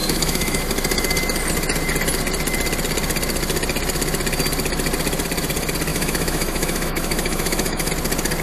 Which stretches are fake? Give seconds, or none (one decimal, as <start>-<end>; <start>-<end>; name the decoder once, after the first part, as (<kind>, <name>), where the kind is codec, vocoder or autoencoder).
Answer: 0.0-0.6 (autoencoder, DAC-VAE); 5.9-7.9